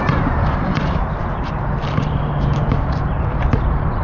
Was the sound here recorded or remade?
remade